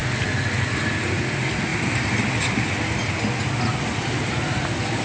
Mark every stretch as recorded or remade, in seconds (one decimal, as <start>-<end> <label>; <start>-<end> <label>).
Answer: 0.0-5.0 recorded